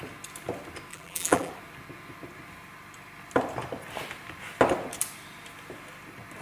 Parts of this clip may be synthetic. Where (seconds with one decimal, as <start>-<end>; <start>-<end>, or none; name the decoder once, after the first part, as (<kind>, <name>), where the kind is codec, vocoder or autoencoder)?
0.9-1.5 (vocoder, BigVGAN v2)